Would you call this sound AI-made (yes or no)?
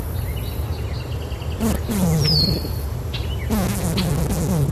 no